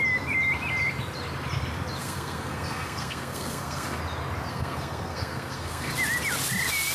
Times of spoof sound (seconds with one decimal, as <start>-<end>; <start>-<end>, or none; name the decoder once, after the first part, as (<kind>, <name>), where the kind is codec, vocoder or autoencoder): 2.0-4.0 (codec, SNAC); 4.5-5.9